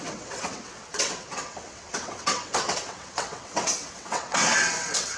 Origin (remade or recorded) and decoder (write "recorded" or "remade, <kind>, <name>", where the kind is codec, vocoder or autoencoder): remade, vocoder, WaveNeXt